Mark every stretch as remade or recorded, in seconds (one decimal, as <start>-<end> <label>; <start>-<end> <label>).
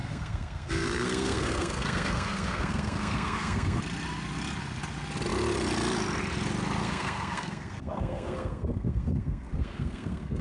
0.0-3.8 remade; 3.8-6.8 recorded; 6.8-10.4 remade